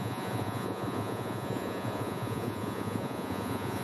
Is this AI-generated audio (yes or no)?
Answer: yes